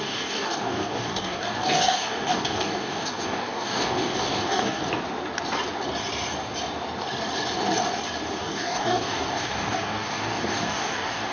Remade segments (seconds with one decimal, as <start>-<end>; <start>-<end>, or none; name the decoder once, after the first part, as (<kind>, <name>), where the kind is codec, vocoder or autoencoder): 0.0-4.8 (codec, DAC); 8.4-11.3